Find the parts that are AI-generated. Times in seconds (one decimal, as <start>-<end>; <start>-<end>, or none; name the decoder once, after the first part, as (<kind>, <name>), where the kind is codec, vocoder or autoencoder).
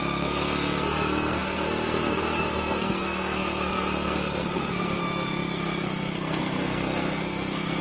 0.0-7.8 (codec, SNAC)